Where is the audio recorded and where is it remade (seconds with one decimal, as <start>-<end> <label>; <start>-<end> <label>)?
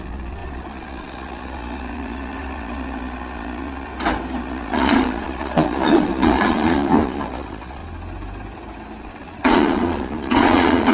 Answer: 0.0-3.9 remade; 3.9-4.4 recorded; 4.4-7.8 remade; 7.8-9.0 recorded; 9.0-10.9 remade